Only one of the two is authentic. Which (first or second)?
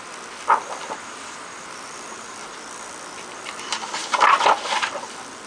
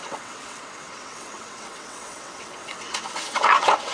first